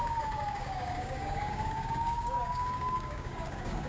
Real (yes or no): no